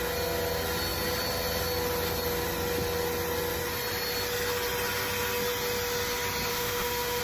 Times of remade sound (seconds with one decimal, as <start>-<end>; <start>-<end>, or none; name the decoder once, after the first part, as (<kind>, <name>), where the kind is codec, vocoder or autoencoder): 6.5-7.2 (autoencoder, DAC-VAE)